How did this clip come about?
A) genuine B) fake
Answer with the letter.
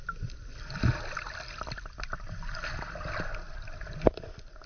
A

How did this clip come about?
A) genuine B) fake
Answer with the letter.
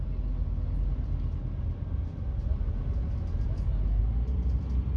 A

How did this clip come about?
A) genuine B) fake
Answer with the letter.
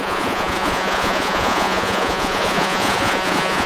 B